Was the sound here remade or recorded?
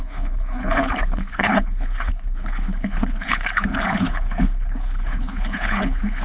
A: remade